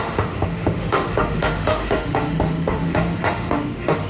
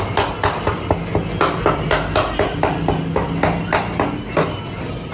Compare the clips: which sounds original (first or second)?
second